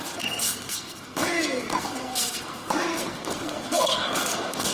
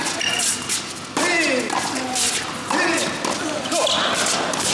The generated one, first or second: first